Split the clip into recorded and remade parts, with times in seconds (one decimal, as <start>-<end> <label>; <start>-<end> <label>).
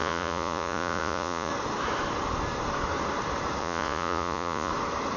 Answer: 0.0-1.5 remade; 1.5-3.6 recorded; 3.6-4.7 remade; 4.7-5.2 recorded